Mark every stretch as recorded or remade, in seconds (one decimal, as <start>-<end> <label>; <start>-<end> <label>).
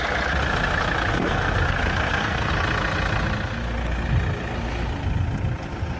0.0-1.1 recorded; 1.1-2.5 remade; 2.5-6.0 recorded